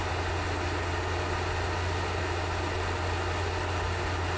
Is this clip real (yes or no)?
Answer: yes